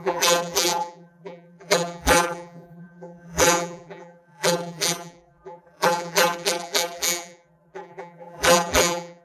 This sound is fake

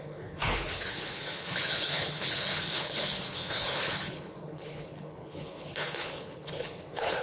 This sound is fake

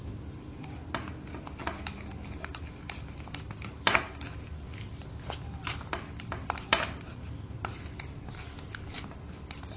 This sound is real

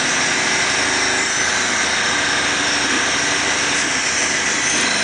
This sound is real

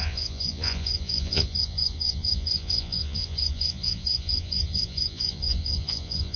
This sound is fake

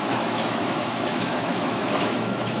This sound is fake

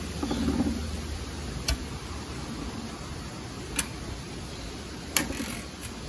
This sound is fake